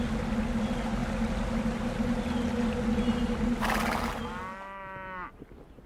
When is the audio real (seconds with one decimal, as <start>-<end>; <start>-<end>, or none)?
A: 0.0-5.9